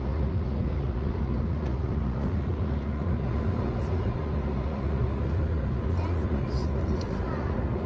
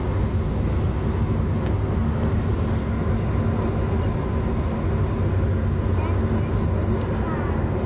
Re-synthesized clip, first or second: first